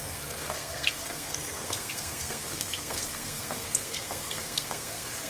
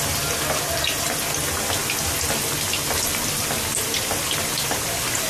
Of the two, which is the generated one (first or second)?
first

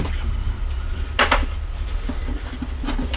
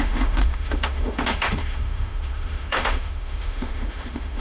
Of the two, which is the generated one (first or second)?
second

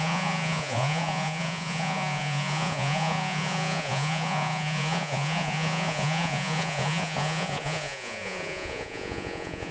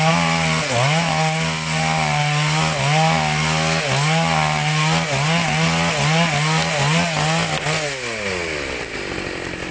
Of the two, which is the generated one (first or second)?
first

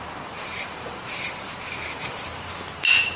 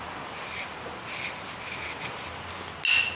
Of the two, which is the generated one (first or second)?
first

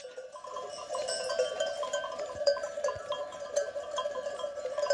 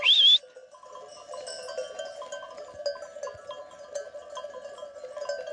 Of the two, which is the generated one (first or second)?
first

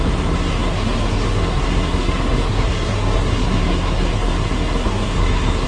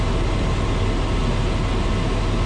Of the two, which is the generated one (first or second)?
first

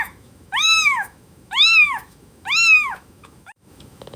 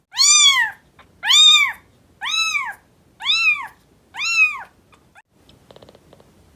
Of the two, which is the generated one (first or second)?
first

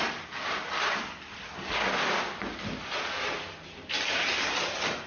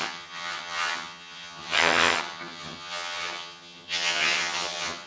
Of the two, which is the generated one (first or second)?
second